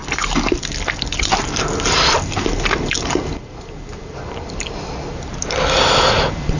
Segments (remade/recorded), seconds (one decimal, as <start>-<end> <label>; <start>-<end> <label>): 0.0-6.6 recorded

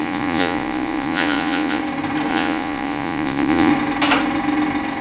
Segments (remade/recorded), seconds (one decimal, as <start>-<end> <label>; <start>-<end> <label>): 0.0-1.8 remade; 1.8-2.3 recorded; 2.3-3.7 remade; 3.7-5.0 recorded

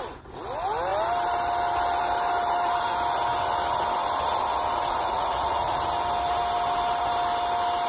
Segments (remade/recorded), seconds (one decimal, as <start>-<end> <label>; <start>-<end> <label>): 0.0-4.9 recorded; 4.9-5.8 remade; 5.8-7.9 recorded